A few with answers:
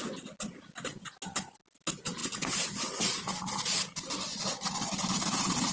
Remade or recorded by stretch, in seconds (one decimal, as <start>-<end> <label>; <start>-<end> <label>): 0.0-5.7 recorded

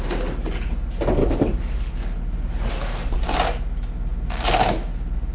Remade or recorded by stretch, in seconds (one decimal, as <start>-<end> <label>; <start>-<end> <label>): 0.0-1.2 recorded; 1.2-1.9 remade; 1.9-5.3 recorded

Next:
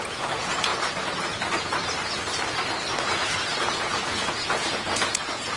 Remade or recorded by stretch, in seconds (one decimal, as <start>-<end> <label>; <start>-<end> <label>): 0.0-0.7 remade; 0.7-3.0 recorded; 3.0-5.6 remade